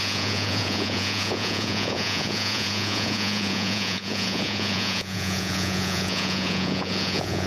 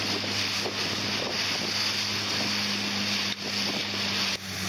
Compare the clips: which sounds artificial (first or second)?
first